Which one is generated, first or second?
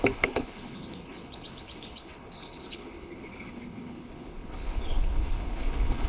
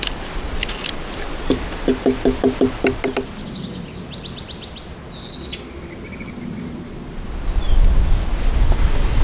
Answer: first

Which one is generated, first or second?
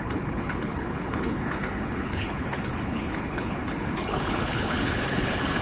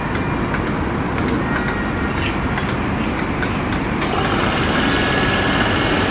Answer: first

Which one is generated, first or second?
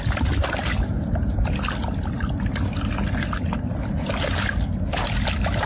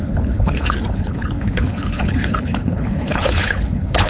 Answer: second